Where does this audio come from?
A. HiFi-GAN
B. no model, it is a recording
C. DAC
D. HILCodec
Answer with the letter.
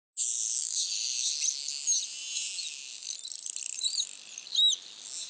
B